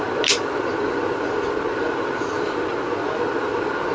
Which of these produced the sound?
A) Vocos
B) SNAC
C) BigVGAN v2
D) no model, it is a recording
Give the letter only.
D